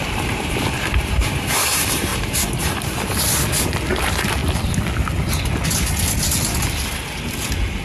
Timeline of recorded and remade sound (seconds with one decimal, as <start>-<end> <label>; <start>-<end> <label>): 0.0-2.1 remade; 2.1-4.0 recorded; 4.0-4.4 remade; 4.4-7.8 recorded